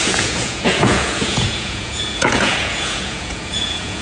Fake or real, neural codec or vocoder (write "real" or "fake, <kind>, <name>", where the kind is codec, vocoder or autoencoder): fake, vocoder, Vocos